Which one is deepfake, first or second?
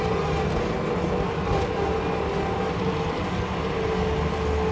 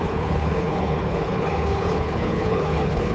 second